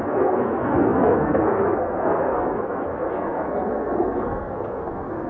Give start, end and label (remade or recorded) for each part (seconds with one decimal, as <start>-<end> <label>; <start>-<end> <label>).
0.0-5.3 remade